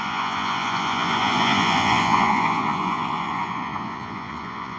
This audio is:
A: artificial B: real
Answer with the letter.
A